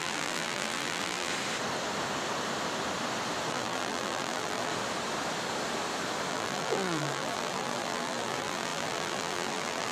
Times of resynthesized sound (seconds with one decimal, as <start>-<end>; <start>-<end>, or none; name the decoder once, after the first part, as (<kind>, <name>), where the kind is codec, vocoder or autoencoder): 0.0-1.3 (vocoder, BigVGAN v2); 3.5-4.7; 6.3-9.9